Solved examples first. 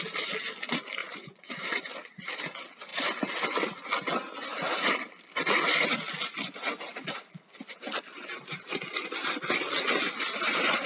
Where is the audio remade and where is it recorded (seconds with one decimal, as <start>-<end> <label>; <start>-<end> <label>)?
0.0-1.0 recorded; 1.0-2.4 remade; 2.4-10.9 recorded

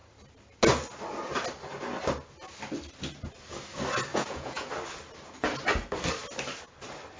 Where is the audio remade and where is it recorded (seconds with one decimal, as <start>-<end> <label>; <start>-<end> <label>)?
0.0-4.1 recorded; 4.1-4.7 remade; 4.7-7.2 recorded

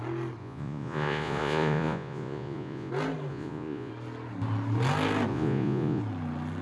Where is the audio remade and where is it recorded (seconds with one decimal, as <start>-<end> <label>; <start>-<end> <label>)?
0.0-0.4 recorded; 0.4-2.9 remade; 2.9-3.3 recorded; 3.3-3.9 remade; 3.9-5.3 recorded; 5.3-6.0 remade; 6.0-6.6 recorded

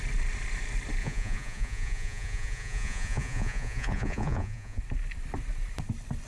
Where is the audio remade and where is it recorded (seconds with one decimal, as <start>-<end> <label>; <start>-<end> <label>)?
0.0-1.0 recorded; 1.0-4.8 remade; 4.8-6.3 recorded